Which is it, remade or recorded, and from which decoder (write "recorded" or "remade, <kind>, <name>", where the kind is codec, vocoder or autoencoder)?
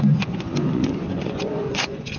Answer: remade, vocoder, Vocos